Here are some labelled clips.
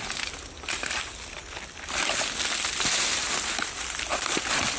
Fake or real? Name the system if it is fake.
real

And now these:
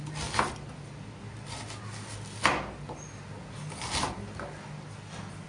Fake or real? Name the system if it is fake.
real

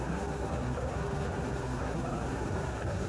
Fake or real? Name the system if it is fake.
fake, codec, SNAC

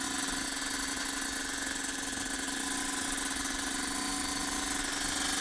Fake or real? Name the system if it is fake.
real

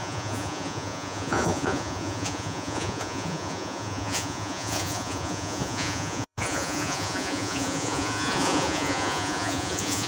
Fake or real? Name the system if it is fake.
fake, vocoder, Vocos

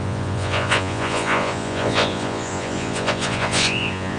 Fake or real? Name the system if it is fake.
fake, vocoder, Vocos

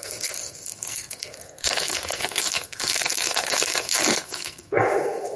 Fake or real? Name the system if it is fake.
fake, codec, SNAC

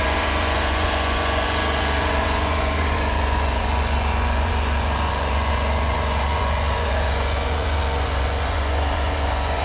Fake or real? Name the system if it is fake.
fake, vocoder, Vocos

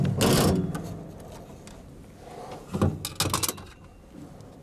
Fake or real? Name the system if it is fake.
real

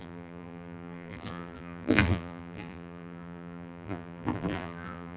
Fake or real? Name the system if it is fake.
fake, vocoder, BigVGAN v2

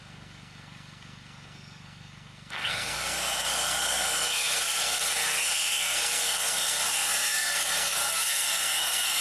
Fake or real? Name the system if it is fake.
fake, codec, SNAC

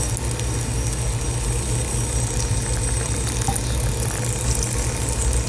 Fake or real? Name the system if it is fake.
real